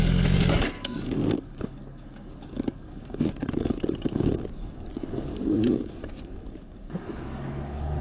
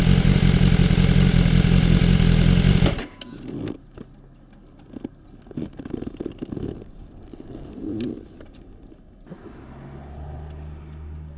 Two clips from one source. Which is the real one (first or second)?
second